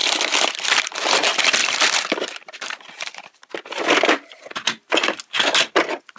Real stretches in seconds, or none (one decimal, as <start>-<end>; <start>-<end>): 0.8-1.6; 4.4-6.2